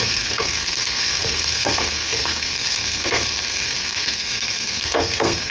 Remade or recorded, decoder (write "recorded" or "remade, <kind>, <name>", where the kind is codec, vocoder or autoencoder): remade, codec, SNAC